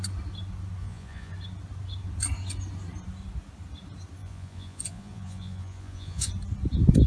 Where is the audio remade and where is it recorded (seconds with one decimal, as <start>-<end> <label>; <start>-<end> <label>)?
0.0-0.8 recorded; 0.8-1.3 remade; 1.3-4.2 recorded; 4.2-6.3 remade; 6.3-7.1 recorded